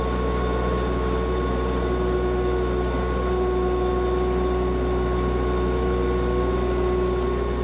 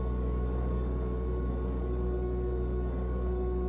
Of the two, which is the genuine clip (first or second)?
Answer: first